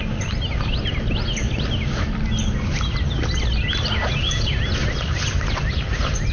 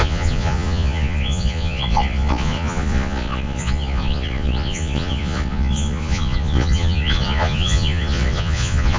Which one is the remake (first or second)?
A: second